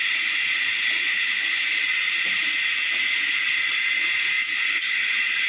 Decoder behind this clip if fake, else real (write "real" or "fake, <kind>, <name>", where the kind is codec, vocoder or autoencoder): fake, vocoder, BigVGAN v2